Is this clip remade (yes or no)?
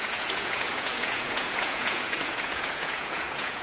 yes